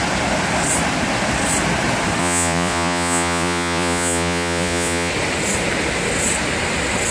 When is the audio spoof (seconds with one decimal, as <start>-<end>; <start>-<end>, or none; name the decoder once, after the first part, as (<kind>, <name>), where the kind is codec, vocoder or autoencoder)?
2.2-5.1 (vocoder, Vocos)